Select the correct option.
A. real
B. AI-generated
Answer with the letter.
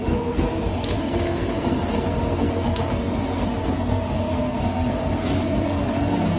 B